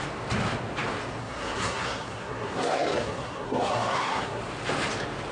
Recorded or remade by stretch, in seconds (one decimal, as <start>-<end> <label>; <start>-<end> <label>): 0.0-1.2 recorded; 1.2-4.4 remade; 4.4-5.3 recorded